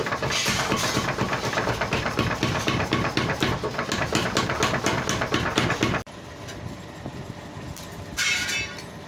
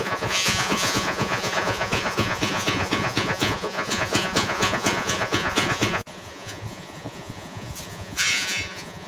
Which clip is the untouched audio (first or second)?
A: first